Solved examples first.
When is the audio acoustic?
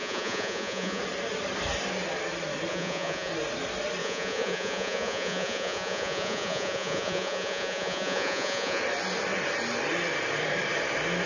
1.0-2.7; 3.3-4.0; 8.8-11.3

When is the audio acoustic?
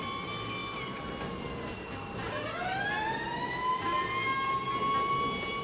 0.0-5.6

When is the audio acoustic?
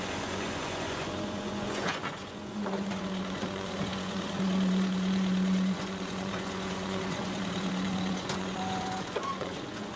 none